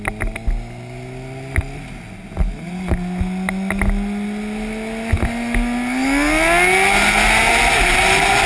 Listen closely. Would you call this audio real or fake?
real